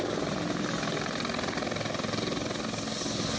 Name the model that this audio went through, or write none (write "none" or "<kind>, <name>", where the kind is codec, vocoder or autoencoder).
none